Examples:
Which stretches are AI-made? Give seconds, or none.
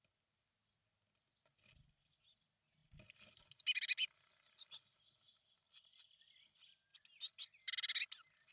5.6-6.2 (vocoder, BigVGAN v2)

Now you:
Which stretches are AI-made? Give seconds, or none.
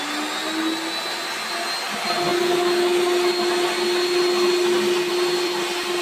none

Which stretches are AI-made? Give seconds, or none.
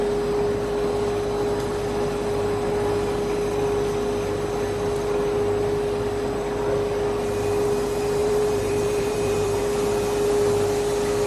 8.2-9.6 (vocoder, BigVGAN v2)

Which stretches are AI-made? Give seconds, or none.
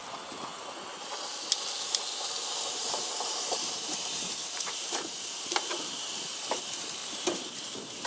2.8-8.1 (vocoder, BigVGAN v2)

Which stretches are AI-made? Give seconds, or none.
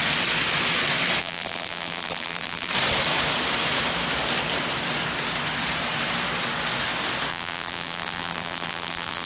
1.2-2.7 (vocoder, BigVGAN v2); 7.3-9.3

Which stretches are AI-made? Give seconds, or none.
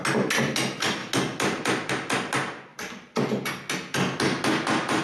2.7-3.5 (vocoder, BigVGAN v2)